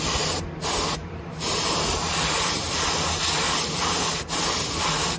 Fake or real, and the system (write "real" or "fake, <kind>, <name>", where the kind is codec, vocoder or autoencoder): real